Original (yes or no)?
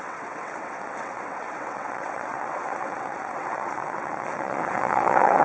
no